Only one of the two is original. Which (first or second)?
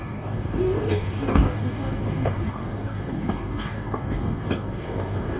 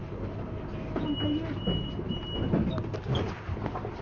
second